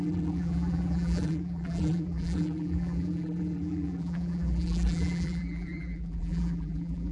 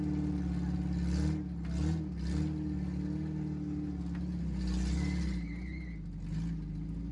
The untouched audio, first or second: second